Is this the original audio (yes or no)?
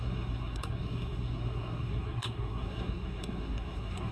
no